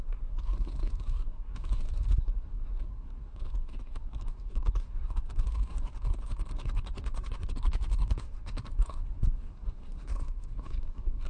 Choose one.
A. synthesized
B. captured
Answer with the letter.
A